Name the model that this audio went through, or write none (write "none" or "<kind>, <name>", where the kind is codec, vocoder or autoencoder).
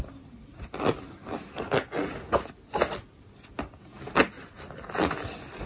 none